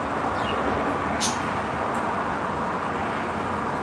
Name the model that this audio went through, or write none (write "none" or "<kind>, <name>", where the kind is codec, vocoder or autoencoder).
none